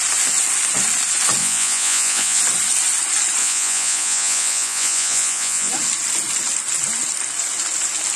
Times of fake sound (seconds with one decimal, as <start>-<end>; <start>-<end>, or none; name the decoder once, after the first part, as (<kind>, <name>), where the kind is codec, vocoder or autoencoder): 1.4-2.4 (vocoder, Vocos); 3.4-5.7